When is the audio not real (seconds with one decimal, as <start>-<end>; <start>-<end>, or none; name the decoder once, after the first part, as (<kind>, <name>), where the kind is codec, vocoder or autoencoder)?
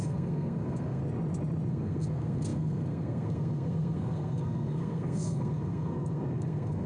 0.0-1.0 (codec, SNAC); 1.7-6.9